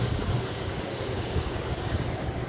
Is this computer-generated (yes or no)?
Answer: yes